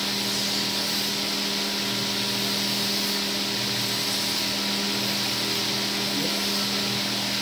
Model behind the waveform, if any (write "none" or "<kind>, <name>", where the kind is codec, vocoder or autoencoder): none